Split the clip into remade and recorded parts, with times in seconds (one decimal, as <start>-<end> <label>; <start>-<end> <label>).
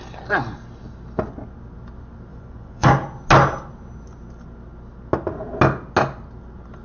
0.0-2.3 recorded; 2.3-2.9 remade; 2.9-6.8 recorded